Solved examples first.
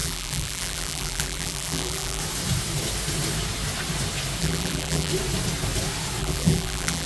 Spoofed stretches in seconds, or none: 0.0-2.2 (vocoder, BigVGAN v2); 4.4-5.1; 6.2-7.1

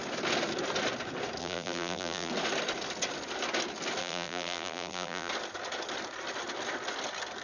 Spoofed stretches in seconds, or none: 1.4-2.3 (vocoder, BigVGAN v2); 4.0-5.3